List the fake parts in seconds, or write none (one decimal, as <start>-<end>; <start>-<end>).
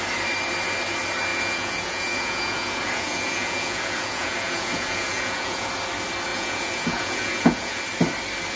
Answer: 1.3-5.7; 6.3-7.8